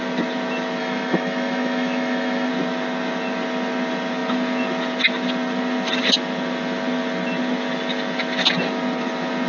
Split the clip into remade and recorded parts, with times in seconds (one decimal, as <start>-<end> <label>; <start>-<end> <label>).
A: 0.0-0.8 recorded; 0.8-2.5 remade; 2.5-9.5 recorded